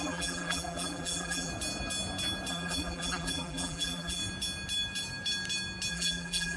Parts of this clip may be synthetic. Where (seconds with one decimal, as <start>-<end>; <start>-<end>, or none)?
0.0-1.5; 2.5-4.2; 5.9-6.6